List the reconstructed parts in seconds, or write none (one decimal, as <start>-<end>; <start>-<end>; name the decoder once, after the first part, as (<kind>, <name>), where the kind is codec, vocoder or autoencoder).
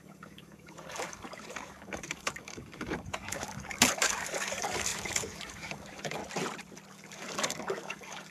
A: 0.0-6.2 (codec, DAC); 6.9-8.3